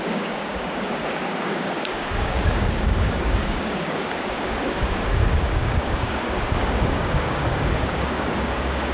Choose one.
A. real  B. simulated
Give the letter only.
B